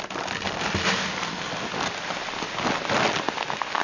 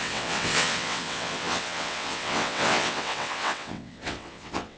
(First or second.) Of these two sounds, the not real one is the second